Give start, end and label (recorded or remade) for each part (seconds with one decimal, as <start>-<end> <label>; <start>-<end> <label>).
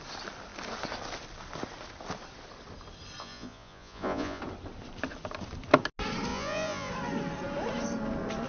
0.0-3.2 recorded; 3.2-4.4 remade; 4.4-6.3 recorded; 6.3-6.9 remade; 6.9-8.5 recorded